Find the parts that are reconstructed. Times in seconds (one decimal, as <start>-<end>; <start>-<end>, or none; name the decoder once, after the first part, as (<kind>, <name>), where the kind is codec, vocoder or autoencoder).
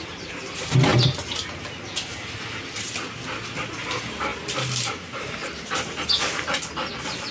none